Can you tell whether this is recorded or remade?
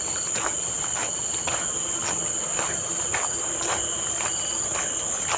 recorded